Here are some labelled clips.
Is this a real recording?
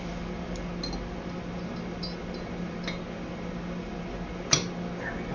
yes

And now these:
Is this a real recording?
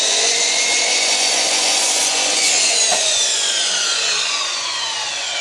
no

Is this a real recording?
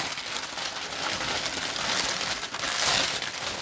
yes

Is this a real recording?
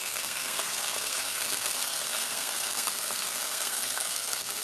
no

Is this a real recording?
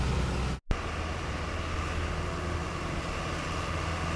yes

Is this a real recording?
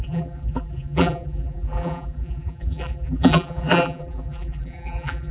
no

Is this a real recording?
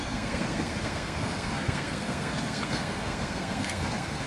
no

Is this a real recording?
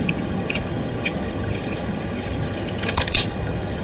no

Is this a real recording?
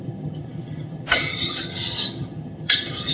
no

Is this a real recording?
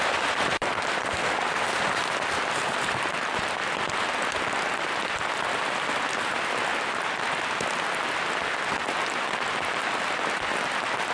yes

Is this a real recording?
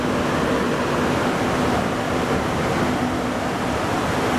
yes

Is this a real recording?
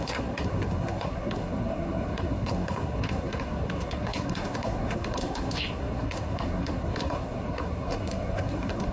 no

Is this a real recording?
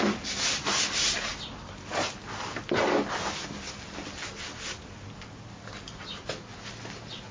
yes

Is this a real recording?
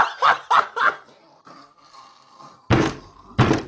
yes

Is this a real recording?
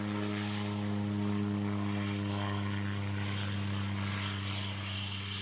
yes